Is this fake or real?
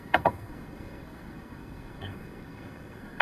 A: fake